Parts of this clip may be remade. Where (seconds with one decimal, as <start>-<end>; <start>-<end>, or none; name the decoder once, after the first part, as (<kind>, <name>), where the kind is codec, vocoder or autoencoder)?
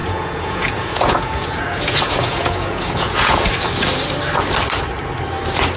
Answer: 0.0-3.5 (vocoder, Vocos)